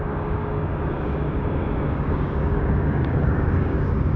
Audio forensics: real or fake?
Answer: fake